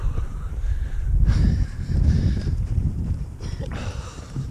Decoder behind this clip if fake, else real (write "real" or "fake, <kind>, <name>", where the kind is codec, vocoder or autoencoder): fake, vocoder, BigVGAN v2